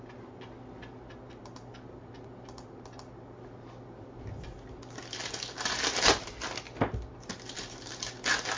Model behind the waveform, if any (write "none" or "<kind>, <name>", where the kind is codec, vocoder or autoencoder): none